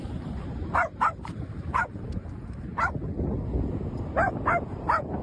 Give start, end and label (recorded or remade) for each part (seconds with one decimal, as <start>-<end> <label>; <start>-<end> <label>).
0.0-1.2 recorded; 1.2-2.7 remade; 2.7-5.2 recorded